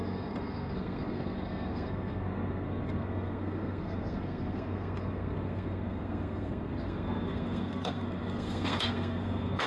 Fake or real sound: fake